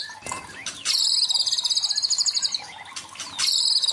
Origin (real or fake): real